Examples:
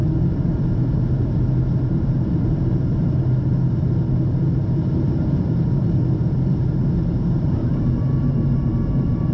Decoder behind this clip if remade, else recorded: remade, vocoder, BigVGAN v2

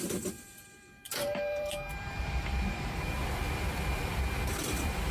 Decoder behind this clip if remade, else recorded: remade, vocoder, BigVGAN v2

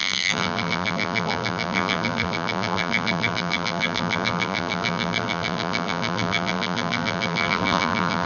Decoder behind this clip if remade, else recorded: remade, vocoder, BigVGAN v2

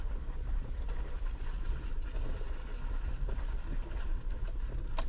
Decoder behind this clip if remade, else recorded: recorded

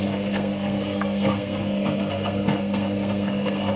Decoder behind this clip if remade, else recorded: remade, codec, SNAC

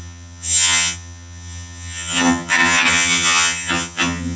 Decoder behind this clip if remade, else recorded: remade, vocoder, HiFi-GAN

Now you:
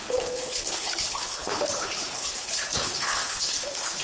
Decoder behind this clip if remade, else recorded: remade, codec, HILCodec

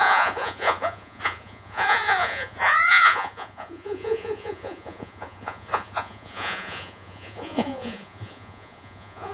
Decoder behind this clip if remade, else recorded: remade, vocoder, Vocos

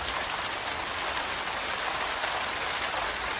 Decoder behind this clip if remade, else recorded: recorded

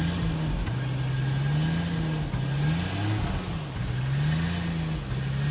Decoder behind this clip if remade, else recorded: recorded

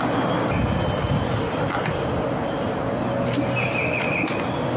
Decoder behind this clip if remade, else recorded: recorded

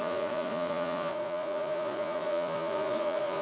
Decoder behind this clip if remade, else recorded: remade, vocoder, Vocos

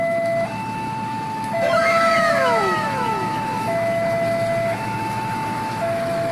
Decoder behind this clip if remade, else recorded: remade, autoencoder, DAC-VAE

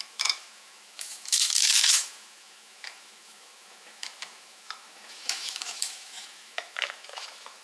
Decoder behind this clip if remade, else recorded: remade, autoencoder, DAC-VAE